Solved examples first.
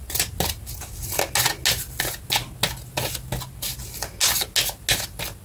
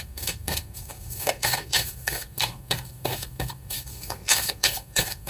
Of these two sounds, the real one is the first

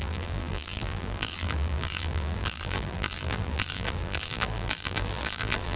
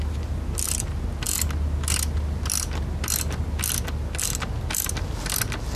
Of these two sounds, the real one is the second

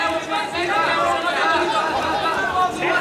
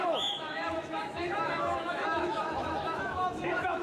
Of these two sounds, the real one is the first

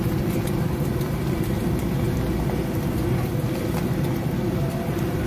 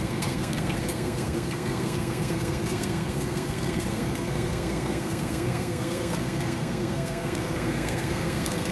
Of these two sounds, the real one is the first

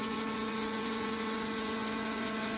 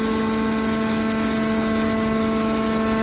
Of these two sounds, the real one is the second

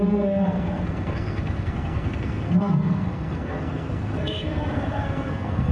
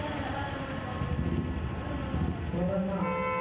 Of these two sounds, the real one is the second